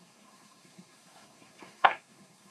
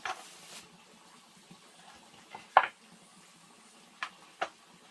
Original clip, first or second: second